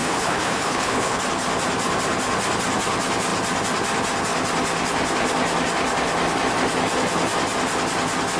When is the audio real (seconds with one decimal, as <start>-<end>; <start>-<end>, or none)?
1.2-8.4